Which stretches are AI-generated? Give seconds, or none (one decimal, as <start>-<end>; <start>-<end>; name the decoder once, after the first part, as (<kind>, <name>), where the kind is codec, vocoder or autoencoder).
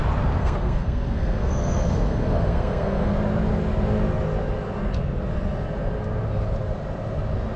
0.4-3.1 (codec, SNAC)